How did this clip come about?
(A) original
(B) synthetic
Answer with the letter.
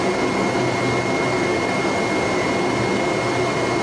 A